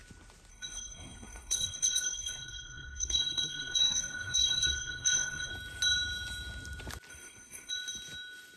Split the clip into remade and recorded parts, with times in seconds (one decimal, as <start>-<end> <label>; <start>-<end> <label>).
0.0-0.5 recorded; 0.5-5.5 remade; 5.5-7.1 recorded; 7.1-7.7 remade; 7.7-8.6 recorded